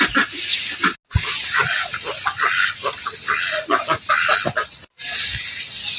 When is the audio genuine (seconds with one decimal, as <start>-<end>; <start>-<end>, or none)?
0.0-6.0